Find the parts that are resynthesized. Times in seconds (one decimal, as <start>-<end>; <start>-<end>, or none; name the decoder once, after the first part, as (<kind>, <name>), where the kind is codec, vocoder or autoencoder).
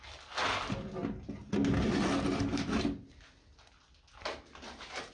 2.5-3.1 (vocoder, BigVGAN v2)